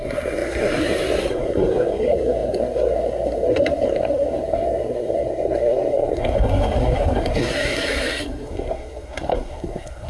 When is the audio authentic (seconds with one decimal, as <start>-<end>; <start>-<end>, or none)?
none